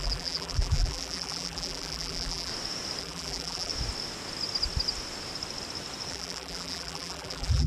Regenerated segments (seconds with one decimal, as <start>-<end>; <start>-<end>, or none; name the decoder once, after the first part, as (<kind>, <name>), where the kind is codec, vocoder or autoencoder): 0.0-2.5 (vocoder, BigVGAN v2); 3.0-3.7; 6.1-7.7